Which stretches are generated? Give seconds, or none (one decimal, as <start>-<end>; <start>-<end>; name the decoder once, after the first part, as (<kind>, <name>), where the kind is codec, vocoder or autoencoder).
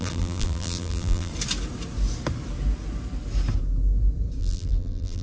0.0-1.3 (vocoder, BigVGAN v2); 4.4-5.2